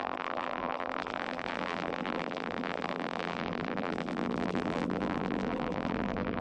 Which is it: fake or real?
fake